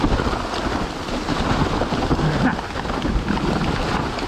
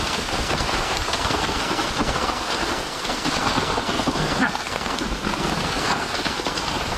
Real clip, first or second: first